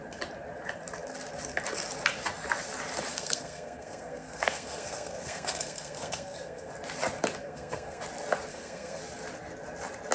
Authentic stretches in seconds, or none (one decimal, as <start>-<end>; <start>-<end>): 0.0-3.1; 6.7-7.4; 8.0-8.5; 9.0-10.1